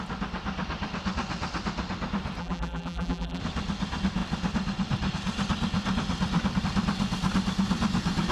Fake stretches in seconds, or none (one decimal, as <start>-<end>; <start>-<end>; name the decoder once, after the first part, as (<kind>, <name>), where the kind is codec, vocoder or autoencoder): 2.4-3.4 (vocoder, BigVGAN v2)